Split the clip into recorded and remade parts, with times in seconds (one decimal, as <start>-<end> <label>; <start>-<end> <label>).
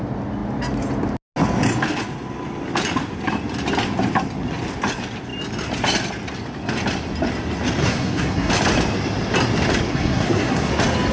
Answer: 0.0-7.8 recorded; 7.8-8.5 remade; 8.5-9.9 recorded; 9.9-10.7 remade; 10.7-11.1 recorded